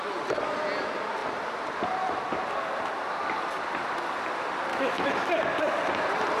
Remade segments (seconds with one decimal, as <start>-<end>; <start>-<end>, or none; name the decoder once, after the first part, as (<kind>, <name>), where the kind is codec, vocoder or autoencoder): 4.7-5.3 (autoencoder, DAC-VAE)